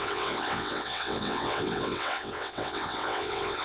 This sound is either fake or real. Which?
fake